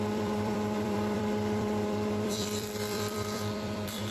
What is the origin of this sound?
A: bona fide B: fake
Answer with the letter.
B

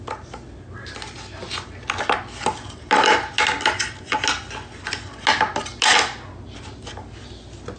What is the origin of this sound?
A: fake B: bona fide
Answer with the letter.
B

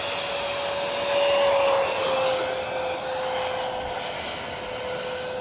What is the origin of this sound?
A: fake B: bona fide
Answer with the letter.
B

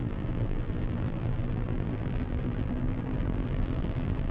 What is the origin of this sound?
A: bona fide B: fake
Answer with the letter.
B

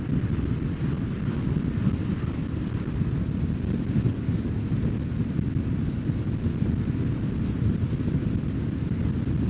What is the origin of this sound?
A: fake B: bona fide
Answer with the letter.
B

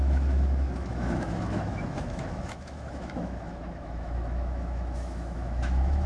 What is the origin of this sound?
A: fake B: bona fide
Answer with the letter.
A